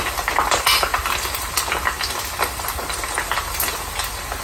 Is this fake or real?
real